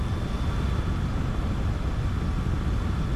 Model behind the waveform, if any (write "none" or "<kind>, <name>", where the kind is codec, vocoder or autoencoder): none